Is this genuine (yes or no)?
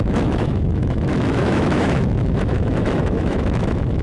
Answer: no